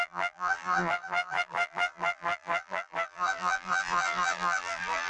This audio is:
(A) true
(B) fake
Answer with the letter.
B